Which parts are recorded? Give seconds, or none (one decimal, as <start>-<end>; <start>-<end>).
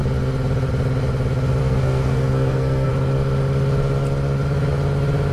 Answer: 0.0-1.6; 2.9-5.3